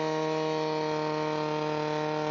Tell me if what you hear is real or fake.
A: real